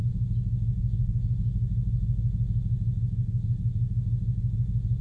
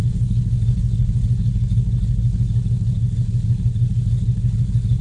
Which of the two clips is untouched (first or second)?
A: first